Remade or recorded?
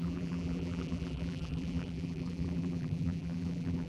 remade